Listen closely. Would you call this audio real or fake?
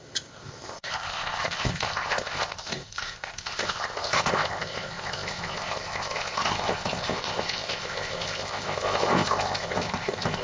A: fake